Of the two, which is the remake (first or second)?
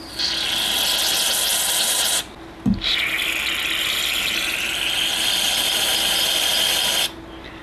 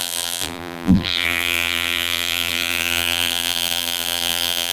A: second